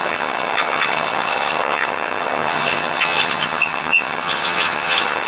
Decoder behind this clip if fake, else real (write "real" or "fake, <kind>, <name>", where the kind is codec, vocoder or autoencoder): fake, vocoder, HiFi-GAN